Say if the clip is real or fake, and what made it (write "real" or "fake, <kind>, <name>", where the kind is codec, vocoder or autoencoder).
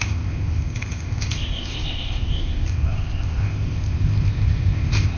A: fake, codec, ZipCodec